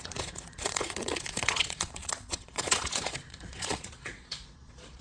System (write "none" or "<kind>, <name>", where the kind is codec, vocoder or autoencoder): vocoder, Vocos